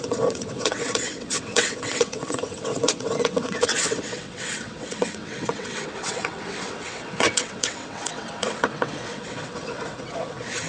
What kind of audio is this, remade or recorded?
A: remade